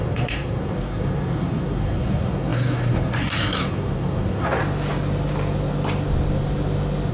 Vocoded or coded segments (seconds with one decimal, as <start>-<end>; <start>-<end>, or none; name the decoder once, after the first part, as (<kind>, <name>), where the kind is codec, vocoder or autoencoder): 0.0-4.6 (codec, SNAC)